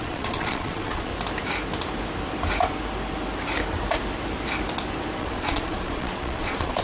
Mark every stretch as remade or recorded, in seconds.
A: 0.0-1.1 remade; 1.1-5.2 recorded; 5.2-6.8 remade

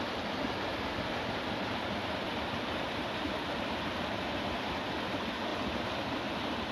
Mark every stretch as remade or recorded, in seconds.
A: 0.0-0.7 recorded; 0.7-4.7 remade; 4.7-5.5 recorded; 5.5-6.7 remade

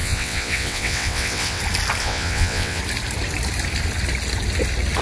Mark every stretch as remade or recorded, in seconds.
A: 0.0-1.6 remade; 1.6-2.0 recorded; 2.0-2.8 remade; 2.8-5.0 recorded

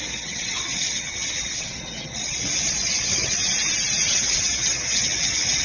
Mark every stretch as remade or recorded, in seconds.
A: 0.0-3.4 remade; 3.4-4.1 recorded; 4.1-5.6 remade

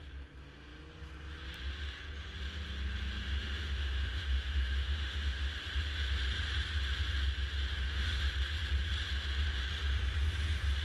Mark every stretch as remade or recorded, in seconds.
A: 0.0-3.2 recorded; 3.2-5.4 remade; 5.4-7.7 recorded; 7.7-8.2 remade; 8.2-10.8 recorded

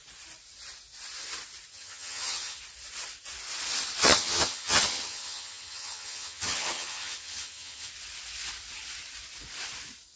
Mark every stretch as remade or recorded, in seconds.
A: 0.0-1.7 recorded; 1.7-2.6 remade; 2.6-4.0 recorded; 4.0-7.9 remade; 7.9-10.2 recorded

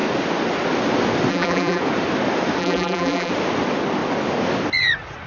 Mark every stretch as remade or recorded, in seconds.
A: 0.0-1.3 recorded; 1.3-1.8 remade; 1.8-2.6 recorded; 2.6-3.3 remade; 3.3-5.3 recorded